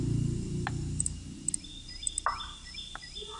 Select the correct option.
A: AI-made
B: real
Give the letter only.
B